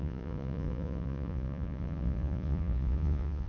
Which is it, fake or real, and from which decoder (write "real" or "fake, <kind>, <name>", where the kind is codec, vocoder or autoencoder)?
fake, vocoder, Vocos